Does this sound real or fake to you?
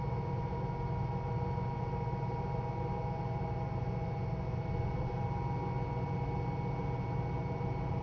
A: real